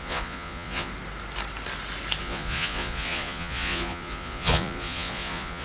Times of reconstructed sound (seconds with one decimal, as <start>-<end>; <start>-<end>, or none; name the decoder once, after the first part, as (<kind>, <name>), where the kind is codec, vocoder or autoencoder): 0.0-0.9 (vocoder, Vocos); 2.2-5.6